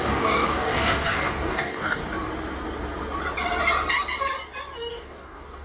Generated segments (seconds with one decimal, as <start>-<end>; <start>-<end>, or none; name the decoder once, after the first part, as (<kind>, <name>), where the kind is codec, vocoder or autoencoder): 0.0-2.0 (codec, DAC); 4.9-5.6